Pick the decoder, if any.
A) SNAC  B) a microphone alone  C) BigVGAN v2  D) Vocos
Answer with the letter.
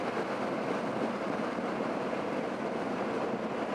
B